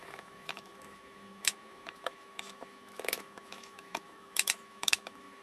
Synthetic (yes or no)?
yes